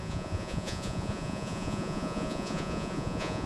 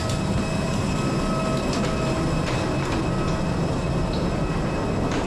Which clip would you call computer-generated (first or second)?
first